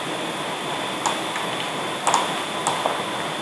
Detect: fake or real real